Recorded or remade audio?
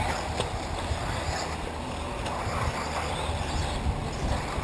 recorded